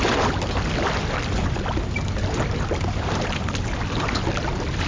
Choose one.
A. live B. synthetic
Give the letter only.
A